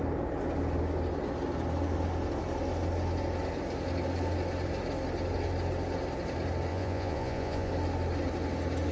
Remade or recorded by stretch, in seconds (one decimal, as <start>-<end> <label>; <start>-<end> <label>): 0.0-6.7 recorded; 6.7-7.7 remade; 7.7-8.9 recorded

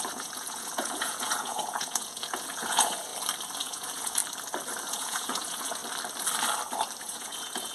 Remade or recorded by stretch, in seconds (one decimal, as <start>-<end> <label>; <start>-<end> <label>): 0.0-3.1 remade; 3.1-3.6 recorded; 3.6-4.2 remade; 4.2-4.9 recorded; 4.9-5.8 remade; 5.8-7.0 recorded; 7.0-7.7 remade

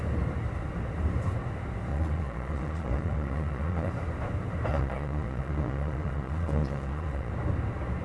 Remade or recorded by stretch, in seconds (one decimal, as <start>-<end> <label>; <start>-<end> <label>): 0.0-1.9 recorded; 1.9-3.9 remade; 3.9-4.7 recorded; 4.7-7.3 remade; 7.3-8.0 recorded

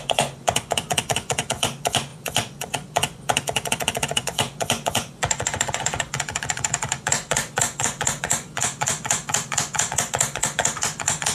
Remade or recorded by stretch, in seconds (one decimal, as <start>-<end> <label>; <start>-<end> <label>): 0.0-11.3 remade

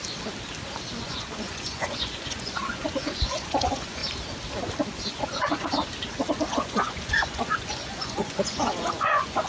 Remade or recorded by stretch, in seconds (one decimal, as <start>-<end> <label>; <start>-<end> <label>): 0.0-1.0 recorded; 1.0-4.0 remade; 4.0-5.1 recorded; 5.1-5.8 remade; 5.8-6.5 recorded; 6.5-9.5 remade

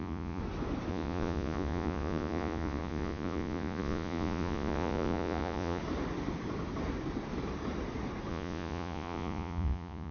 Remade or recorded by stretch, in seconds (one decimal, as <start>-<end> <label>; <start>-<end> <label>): 0.0-0.4 remade; 0.4-0.9 recorded; 0.9-5.8 remade; 5.8-8.3 recorded; 8.3-10.1 remade

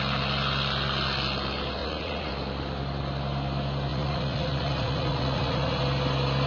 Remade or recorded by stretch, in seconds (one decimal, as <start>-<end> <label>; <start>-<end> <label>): 0.0-1.8 recorded; 1.8-2.3 remade; 2.3-3.9 recorded; 3.9-5.8 remade; 5.8-6.5 recorded